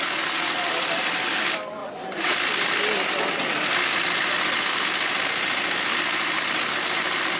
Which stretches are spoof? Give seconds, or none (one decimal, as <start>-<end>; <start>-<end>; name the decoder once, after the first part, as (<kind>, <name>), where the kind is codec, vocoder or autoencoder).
none